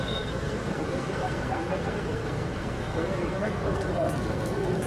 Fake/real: fake